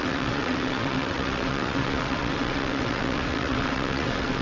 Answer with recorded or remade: remade